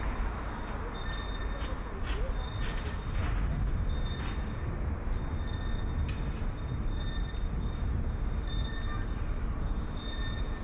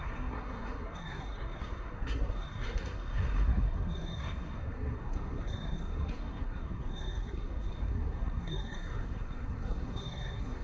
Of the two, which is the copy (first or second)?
second